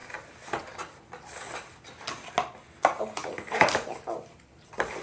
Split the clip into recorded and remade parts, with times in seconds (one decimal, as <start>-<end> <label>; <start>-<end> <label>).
0.0-3.0 recorded; 3.0-5.0 remade